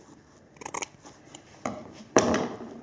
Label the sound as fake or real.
fake